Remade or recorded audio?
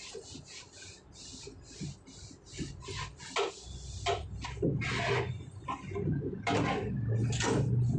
recorded